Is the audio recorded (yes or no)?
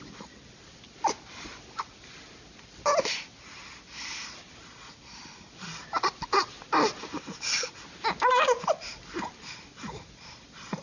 yes